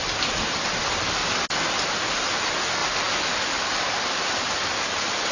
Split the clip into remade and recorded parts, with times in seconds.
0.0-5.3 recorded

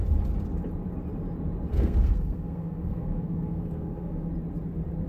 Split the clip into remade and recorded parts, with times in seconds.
0.0-1.7 recorded; 1.7-4.3 remade; 4.3-5.1 recorded

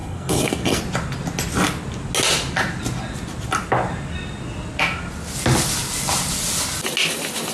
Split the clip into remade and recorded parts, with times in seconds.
0.0-0.8 remade; 0.8-7.5 recorded

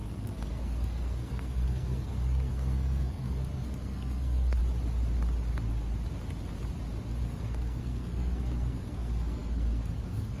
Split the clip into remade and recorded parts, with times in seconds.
0.0-4.6 remade; 4.6-7.2 recorded; 7.2-10.4 remade

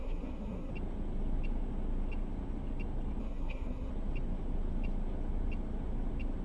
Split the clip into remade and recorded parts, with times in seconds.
0.0-0.7 remade; 0.7-3.2 recorded; 3.2-3.9 remade; 3.9-6.4 recorded

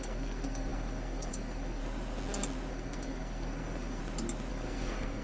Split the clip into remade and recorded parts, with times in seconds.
0.0-1.8 remade; 1.8-2.7 recorded; 2.7-4.0 remade; 4.0-4.5 recorded; 4.5-5.2 remade

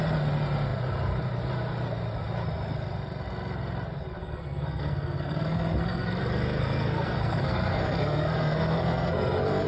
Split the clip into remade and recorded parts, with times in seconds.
0.0-4.2 recorded; 4.2-9.7 remade

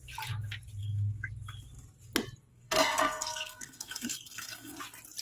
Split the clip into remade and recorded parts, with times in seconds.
0.0-0.8 recorded; 0.8-1.3 remade; 1.3-2.5 recorded; 2.5-4.8 remade; 4.8-5.2 recorded